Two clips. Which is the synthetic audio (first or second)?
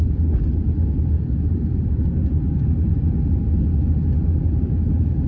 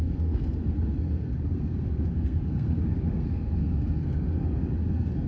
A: second